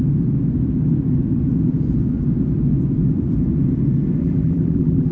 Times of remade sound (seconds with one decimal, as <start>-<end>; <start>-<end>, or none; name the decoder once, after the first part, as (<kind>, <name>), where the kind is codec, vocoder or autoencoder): 4.2-5.1 (vocoder, BigVGAN v2)